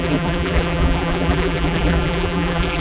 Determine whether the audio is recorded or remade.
remade